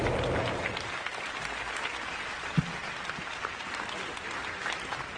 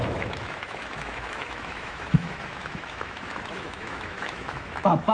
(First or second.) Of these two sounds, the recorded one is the first